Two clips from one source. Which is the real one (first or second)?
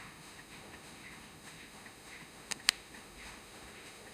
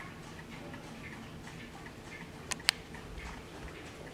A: second